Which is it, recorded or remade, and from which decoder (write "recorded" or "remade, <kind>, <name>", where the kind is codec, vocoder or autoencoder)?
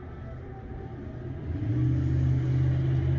recorded